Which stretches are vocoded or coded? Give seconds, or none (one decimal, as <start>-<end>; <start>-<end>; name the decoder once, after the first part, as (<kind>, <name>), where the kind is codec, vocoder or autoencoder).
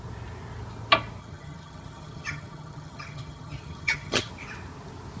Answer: 1.2-4.3 (vocoder, HiFi-GAN)